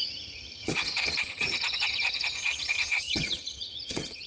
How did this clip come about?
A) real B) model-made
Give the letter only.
B